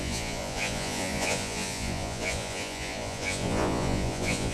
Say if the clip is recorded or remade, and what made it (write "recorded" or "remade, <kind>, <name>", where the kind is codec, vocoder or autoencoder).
remade, vocoder, Vocos